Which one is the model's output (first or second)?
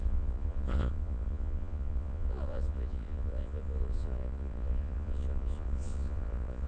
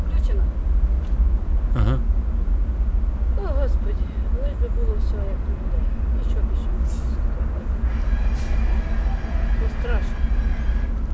first